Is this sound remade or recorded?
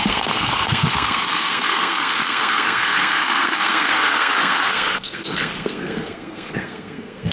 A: remade